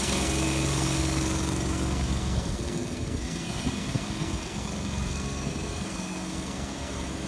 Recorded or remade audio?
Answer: remade